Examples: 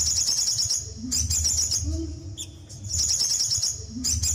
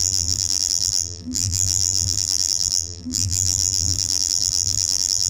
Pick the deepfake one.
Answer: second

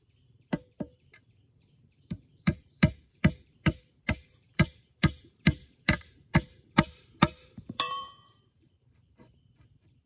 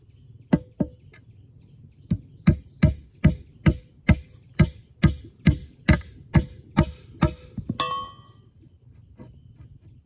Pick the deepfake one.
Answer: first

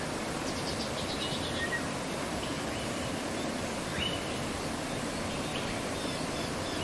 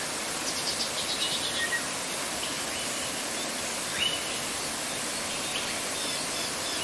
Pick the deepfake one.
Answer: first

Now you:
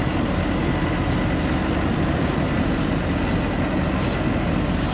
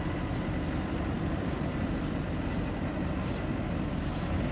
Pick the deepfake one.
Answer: second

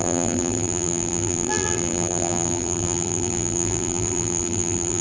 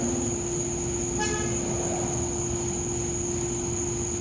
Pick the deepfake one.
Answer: first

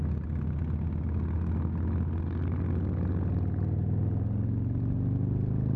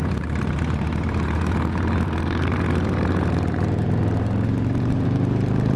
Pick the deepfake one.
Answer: second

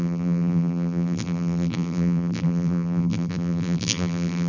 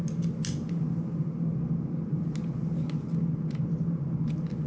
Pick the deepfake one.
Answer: first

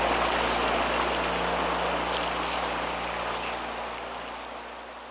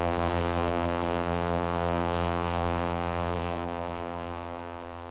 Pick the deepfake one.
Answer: second